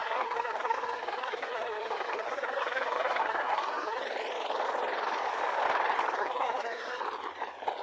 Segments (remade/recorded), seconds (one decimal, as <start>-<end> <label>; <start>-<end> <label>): 0.0-4.0 remade; 4.0-6.2 recorded; 6.2-7.0 remade; 7.0-7.8 recorded